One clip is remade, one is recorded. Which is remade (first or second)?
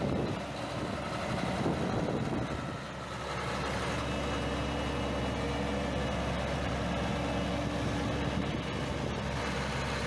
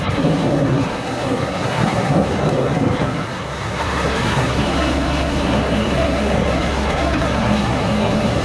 second